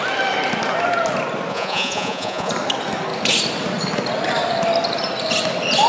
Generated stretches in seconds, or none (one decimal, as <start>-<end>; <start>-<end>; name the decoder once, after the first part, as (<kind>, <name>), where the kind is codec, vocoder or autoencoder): 1.5-2.5 (vocoder, Vocos)